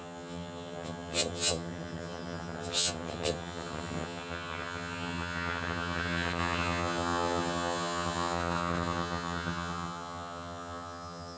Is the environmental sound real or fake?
fake